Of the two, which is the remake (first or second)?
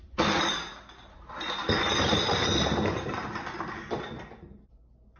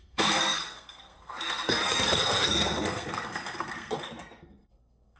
second